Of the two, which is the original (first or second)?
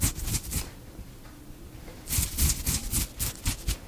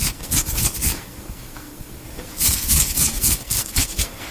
first